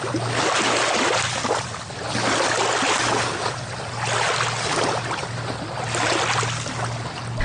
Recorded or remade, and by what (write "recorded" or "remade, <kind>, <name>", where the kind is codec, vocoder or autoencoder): recorded